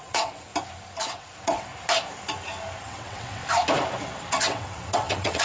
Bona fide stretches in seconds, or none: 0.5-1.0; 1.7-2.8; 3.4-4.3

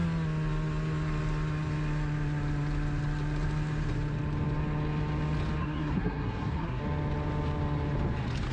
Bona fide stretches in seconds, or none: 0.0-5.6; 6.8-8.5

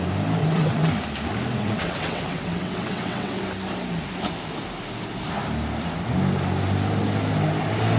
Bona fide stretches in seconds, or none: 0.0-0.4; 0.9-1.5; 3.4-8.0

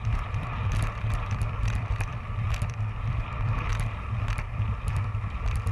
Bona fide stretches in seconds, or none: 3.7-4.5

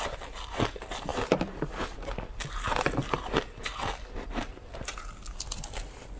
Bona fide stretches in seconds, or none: 0.0-6.2